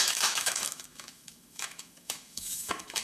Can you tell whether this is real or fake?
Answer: fake